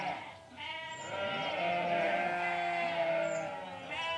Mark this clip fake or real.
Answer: real